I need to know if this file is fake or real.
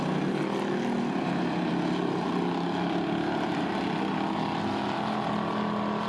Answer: real